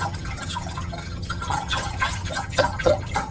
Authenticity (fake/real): fake